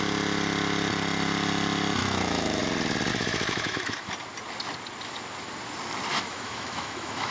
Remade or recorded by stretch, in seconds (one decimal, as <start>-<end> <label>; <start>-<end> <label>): 0.0-2.0 recorded; 2.0-2.6 remade; 2.6-3.1 recorded; 3.1-4.1 remade; 4.1-6.1 recorded; 6.1-7.3 remade